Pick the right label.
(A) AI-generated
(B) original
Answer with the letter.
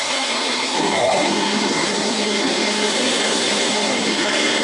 A